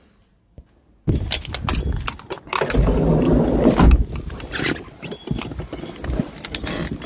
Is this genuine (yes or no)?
yes